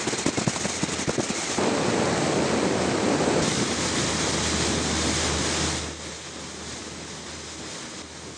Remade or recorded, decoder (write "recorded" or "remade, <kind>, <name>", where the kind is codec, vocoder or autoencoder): recorded